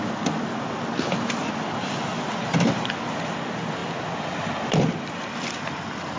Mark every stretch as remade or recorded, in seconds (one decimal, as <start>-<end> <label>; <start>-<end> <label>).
0.0-6.2 recorded